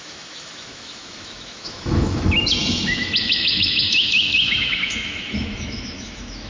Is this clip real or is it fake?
fake